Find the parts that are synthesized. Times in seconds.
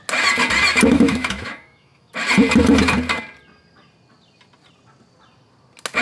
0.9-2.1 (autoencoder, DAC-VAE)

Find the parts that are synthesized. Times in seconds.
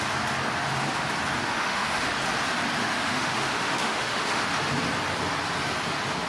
1.5-2.1 (autoencoder, DAC-VAE); 2.8-4.4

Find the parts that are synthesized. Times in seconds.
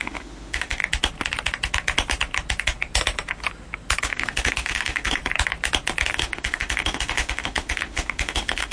0.0-0.8 (autoencoder, DAC-VAE); 4.0-5.2; 6.1-8.7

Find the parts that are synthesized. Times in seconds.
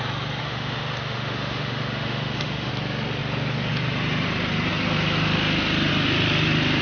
0.4-2.7 (autoencoder, DAC-VAE)